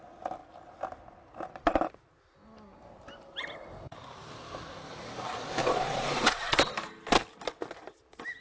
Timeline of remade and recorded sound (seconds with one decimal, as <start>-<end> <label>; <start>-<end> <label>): 0.0-5.6 recorded; 5.6-6.7 remade; 6.7-8.4 recorded